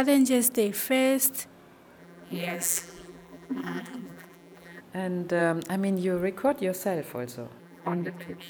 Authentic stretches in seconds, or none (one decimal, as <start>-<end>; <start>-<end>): 0.0-2.0; 4.8-7.6